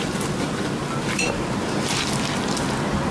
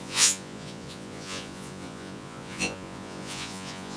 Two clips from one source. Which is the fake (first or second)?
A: second